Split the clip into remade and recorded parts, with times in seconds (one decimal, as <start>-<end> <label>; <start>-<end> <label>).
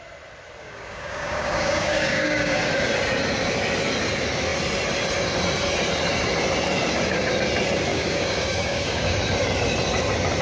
0.0-0.6 recorded; 0.6-2.6 remade; 2.6-7.9 recorded; 7.9-9.2 remade; 9.2-10.4 recorded